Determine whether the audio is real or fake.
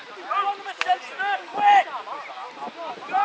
real